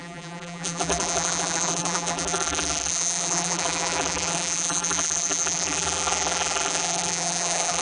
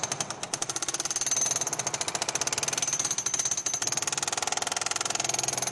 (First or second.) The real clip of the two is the second